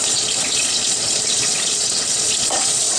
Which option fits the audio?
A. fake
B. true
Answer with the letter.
A